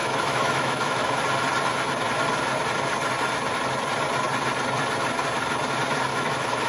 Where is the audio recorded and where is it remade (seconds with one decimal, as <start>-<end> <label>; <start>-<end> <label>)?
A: 0.0-1.2 remade; 1.2-6.1 recorded; 6.1-6.7 remade